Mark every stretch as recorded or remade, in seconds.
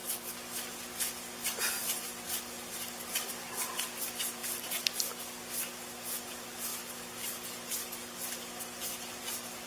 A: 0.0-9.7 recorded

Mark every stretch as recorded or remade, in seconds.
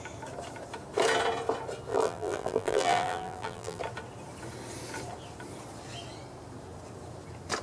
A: 0.0-1.9 recorded; 1.9-3.8 remade; 3.8-7.6 recorded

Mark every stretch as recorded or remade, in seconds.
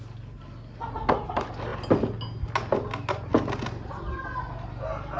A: 0.0-5.2 recorded